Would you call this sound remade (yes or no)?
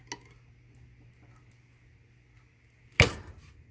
no